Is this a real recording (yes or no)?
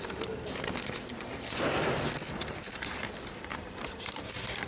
yes